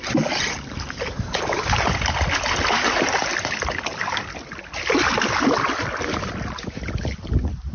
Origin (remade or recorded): recorded